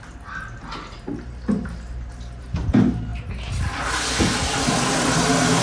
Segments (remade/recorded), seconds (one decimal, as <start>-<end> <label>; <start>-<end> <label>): 0.0-5.6 recorded